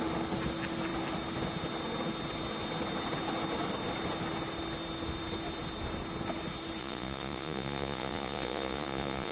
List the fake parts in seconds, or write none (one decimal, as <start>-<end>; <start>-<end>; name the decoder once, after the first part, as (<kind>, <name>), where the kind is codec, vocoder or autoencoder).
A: 6.8-9.3 (vocoder, Vocos)